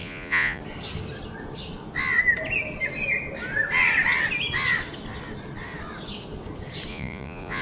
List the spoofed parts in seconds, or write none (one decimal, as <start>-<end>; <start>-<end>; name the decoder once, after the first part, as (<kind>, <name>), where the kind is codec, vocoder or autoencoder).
0.0-0.6 (vocoder, Vocos); 6.9-7.6